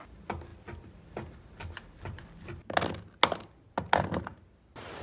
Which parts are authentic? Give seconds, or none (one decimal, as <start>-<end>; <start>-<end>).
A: 0.0-5.0